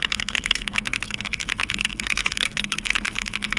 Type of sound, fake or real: fake